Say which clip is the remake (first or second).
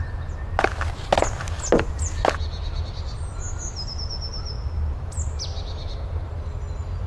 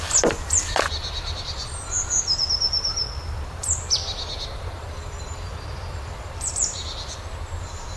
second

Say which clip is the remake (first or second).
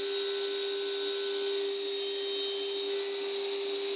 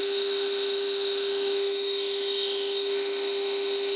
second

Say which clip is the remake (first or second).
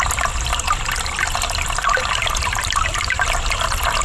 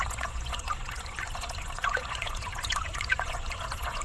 second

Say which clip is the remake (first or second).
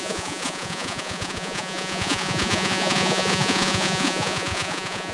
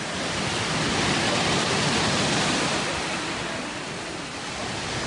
first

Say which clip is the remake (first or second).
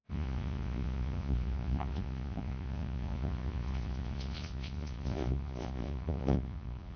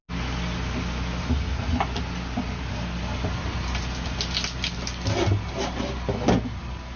first